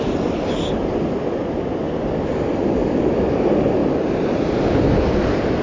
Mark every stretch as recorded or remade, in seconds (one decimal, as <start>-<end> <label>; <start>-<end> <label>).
0.0-3.8 recorded; 3.8-4.5 remade; 4.5-5.6 recorded